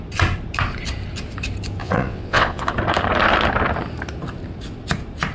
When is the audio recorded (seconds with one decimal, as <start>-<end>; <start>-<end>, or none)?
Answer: 0.0-1.8; 2.7-5.3